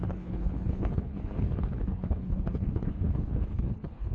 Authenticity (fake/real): fake